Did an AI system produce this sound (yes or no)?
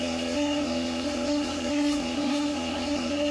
yes